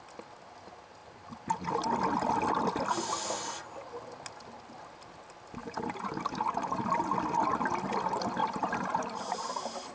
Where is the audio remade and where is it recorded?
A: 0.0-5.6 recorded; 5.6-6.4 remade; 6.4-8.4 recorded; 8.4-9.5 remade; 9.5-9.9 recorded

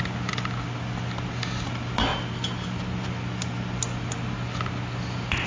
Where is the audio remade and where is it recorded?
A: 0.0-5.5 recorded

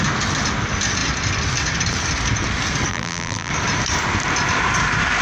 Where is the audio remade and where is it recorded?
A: 0.0-2.9 recorded; 2.9-3.5 remade; 3.5-5.2 recorded

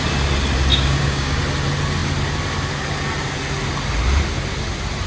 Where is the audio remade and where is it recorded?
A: 0.0-0.7 recorded; 0.7-1.4 remade; 1.4-5.1 recorded

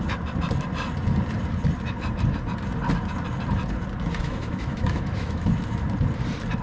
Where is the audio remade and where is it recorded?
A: 0.0-4.2 recorded; 4.2-5.5 remade; 5.5-6.6 recorded

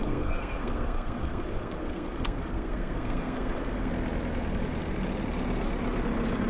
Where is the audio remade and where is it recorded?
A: 0.0-3.9 remade; 3.9-6.5 recorded